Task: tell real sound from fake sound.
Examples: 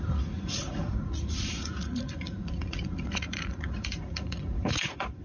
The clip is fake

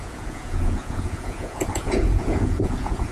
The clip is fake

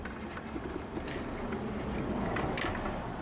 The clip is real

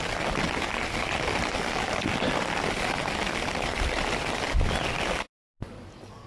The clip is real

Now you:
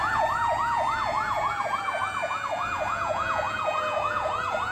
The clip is fake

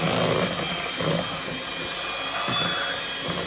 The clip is real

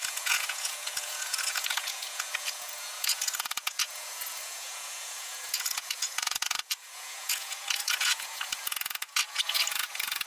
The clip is fake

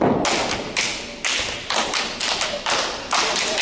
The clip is real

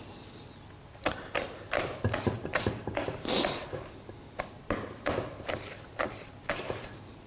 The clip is real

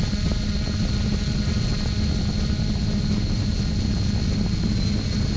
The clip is real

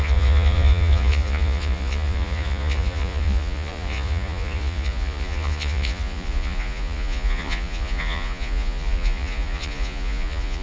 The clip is fake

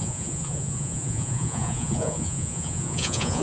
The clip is fake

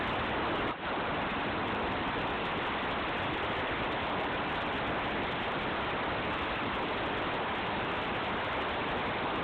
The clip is real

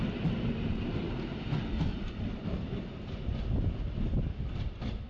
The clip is real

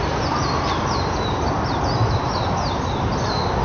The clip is real